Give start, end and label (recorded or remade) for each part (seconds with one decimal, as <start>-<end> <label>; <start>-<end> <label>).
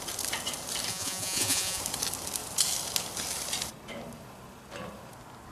0.0-0.9 recorded; 0.9-1.8 remade; 1.8-5.5 recorded